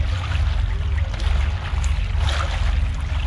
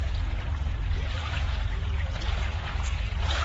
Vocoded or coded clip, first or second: second